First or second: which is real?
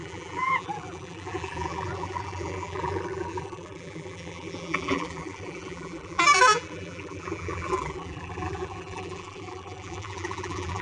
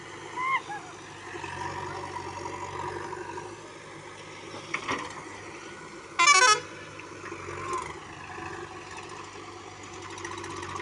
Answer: second